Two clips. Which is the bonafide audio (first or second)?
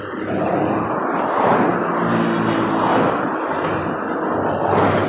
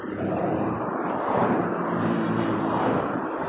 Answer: first